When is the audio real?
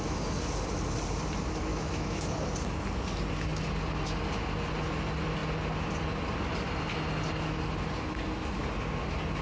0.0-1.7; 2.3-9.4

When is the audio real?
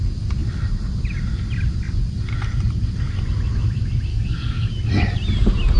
0.0-4.1; 4.7-5.8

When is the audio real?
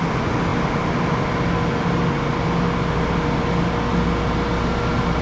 0.0-5.2